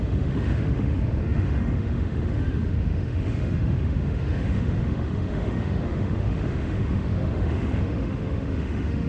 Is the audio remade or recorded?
remade